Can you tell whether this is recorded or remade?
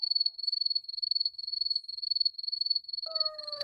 remade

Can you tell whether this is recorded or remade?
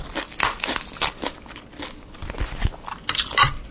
recorded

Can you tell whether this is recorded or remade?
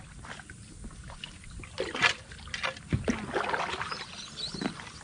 recorded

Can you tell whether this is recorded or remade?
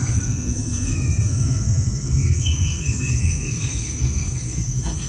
remade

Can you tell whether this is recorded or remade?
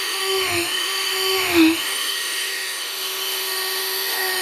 remade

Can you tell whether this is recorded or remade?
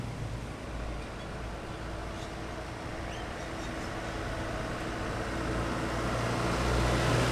recorded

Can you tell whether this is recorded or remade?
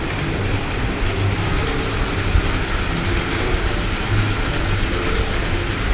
recorded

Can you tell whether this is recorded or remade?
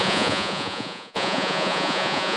remade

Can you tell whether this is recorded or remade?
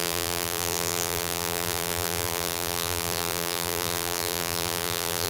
remade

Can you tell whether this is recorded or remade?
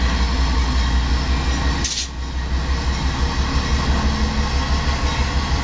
recorded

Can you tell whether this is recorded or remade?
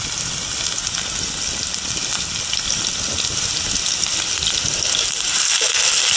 recorded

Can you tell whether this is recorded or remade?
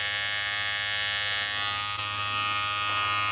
recorded